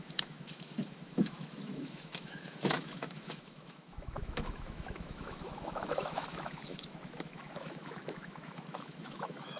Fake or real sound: fake